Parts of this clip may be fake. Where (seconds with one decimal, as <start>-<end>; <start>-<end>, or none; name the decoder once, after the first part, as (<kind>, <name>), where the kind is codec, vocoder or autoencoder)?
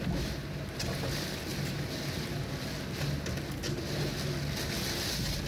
none